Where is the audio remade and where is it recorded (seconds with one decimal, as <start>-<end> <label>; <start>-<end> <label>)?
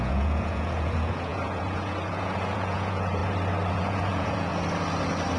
0.0-3.2 remade; 3.2-3.7 recorded; 3.7-4.5 remade; 4.5-5.4 recorded